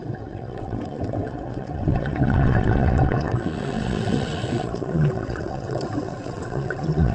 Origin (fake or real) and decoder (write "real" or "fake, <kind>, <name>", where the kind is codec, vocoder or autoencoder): fake, vocoder, WaveNeXt